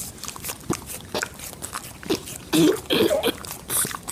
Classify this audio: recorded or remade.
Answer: recorded